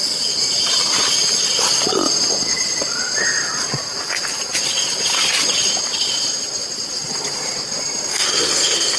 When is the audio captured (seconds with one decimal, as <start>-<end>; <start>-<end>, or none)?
0.0-8.1